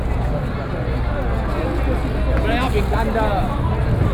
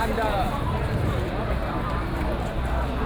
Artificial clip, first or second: second